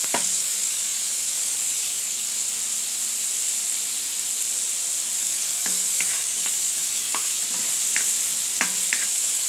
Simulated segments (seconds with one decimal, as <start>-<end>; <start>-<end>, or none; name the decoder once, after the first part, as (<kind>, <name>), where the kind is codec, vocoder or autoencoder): 0.0-2.3 (codec, DAC); 5.2-7.3; 9.1-9.5